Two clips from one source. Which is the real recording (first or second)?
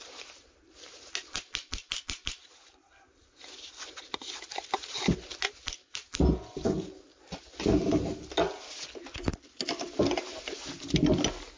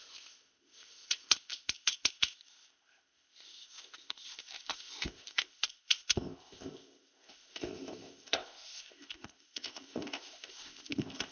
first